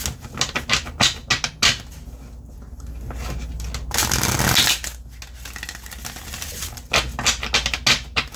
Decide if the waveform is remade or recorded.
recorded